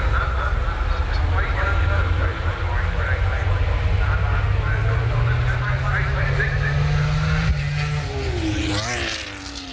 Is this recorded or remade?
recorded